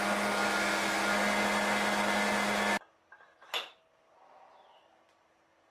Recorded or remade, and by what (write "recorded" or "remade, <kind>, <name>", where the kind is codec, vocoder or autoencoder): recorded